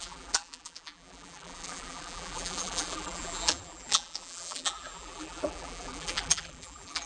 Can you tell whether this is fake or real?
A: fake